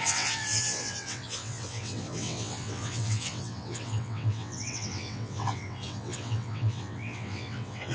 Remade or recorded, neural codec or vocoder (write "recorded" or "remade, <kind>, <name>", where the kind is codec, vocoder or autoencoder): remade, vocoder, WaveNeXt